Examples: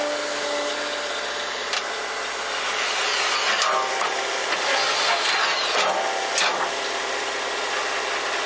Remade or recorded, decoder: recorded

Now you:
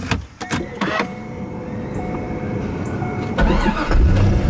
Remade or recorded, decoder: recorded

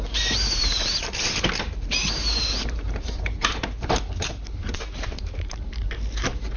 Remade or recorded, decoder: remade, vocoder, BigVGAN v2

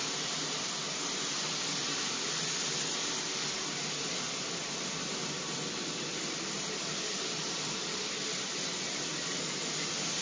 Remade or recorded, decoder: recorded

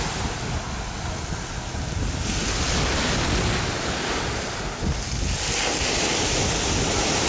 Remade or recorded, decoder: recorded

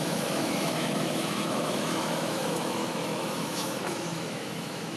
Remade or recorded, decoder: remade, autoencoder, DAC-VAE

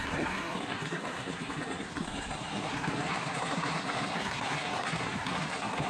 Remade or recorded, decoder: remade, codec, SNAC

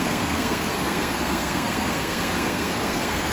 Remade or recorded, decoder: remade, codec, SNAC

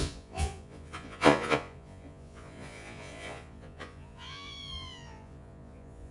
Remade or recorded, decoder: remade, vocoder, Vocos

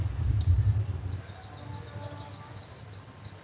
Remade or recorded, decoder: recorded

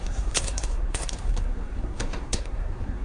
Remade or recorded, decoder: remade, codec, SNAC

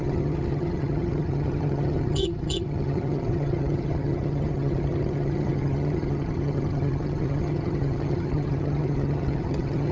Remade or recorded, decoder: remade, vocoder, HiFi-GAN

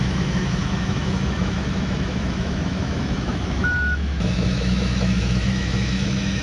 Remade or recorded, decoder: remade, autoencoder, DAC-VAE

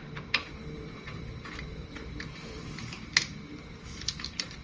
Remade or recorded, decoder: remade, vocoder, BigVGAN v2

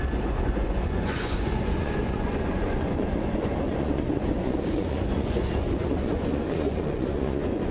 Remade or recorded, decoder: remade, vocoder, Vocos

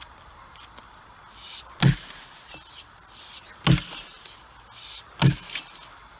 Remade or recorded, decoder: recorded